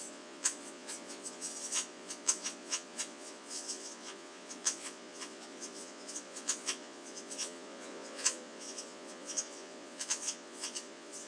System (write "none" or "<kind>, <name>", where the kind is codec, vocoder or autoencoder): vocoder, Vocos